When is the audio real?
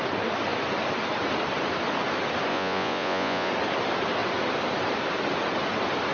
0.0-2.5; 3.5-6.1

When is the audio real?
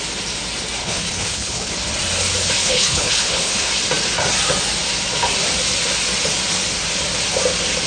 0.0-0.8; 1.7-2.6; 3.7-7.9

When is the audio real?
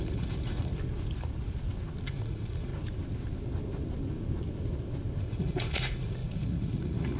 0.7-2.1; 2.7-5.2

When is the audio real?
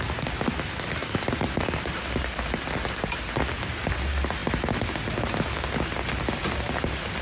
0.0-7.2